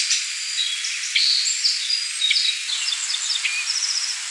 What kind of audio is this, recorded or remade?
recorded